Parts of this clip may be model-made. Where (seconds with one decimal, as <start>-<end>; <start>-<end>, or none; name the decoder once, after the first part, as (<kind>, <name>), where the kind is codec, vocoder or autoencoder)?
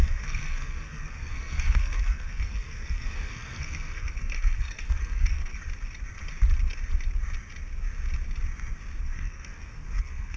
0.0-5.5 (codec, SNAC); 9.0-10.4